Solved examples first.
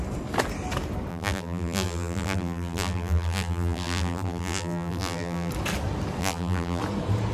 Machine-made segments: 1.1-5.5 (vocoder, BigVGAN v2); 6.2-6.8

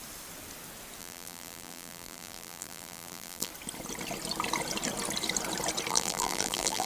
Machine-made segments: 1.0-3.5 (vocoder, BigVGAN v2); 5.9-6.9

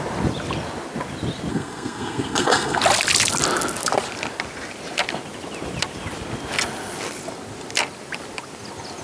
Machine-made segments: 1.5-2.8 (codec, SNAC)

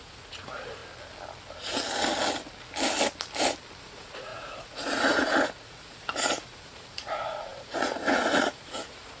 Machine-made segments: 0.0-0.8 (vocoder, Vocos); 3.8-9.2

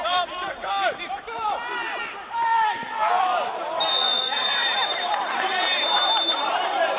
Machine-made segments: 0.0-1.8 (vocoder, BigVGAN v2); 4.4-7.0